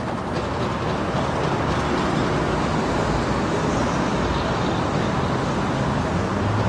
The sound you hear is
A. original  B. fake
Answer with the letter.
A